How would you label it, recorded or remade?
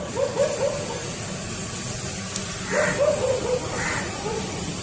recorded